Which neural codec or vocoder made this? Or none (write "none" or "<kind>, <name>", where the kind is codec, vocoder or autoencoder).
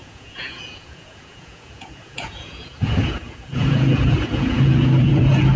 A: vocoder, Vocos